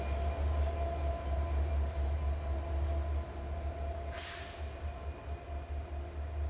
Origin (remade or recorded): recorded